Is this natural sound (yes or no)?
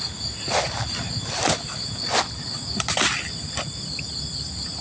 yes